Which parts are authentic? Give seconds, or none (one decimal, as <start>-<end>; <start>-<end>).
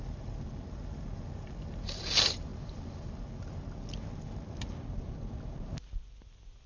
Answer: 0.0-6.7